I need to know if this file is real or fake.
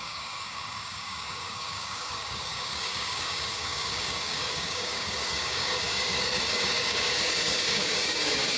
fake